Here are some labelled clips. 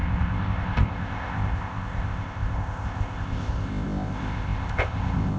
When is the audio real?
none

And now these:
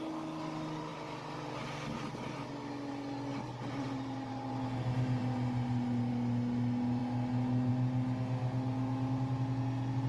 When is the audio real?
0.0-10.1

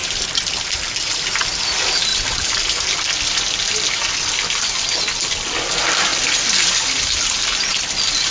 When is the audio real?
0.5-2.1; 3.4-6.1; 7.3-8.3

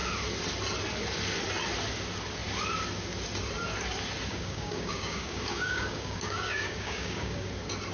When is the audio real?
0.0-4.3; 7.5-7.9

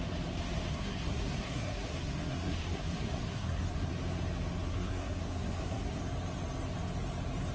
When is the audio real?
0.0-0.7; 3.9-4.7; 6.0-7.5

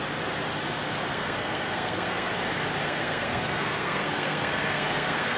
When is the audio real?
0.0-1.1; 2.3-2.8